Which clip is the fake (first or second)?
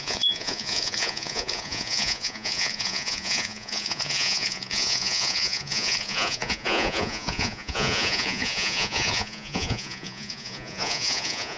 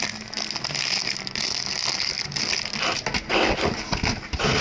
first